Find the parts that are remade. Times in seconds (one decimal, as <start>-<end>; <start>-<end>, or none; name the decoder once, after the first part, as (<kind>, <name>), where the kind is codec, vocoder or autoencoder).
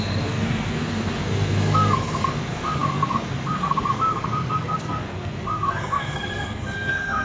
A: 0.0-7.2 (codec, SNAC)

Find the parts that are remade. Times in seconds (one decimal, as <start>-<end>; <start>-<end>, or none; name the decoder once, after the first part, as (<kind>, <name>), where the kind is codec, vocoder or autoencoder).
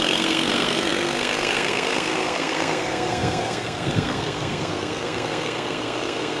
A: 0.0-6.4 (codec, SNAC)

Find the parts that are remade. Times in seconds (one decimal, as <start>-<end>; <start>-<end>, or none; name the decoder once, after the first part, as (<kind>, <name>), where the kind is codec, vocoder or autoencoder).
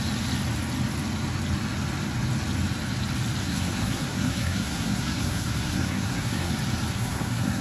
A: 3.4-6.5 (codec, SNAC); 6.9-7.6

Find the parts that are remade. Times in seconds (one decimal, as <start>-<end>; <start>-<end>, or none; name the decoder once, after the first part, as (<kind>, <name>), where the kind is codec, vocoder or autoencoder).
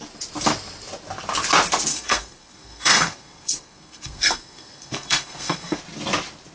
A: 1.9-5.8 (codec, SNAC)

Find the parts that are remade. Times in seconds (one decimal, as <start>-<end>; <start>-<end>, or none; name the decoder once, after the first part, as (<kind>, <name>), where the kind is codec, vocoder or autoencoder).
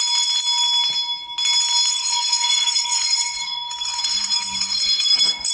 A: 1.9-5.5 (codec, SNAC)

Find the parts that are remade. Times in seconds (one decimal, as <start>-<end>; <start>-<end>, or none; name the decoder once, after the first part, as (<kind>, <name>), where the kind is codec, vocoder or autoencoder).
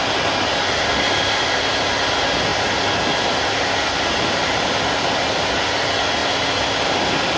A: none